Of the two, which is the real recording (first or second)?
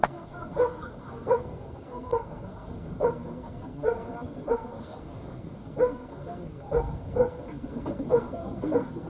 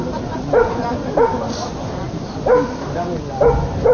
second